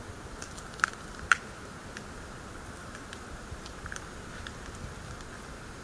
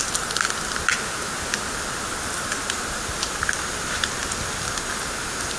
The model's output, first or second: first